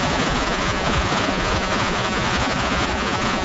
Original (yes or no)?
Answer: no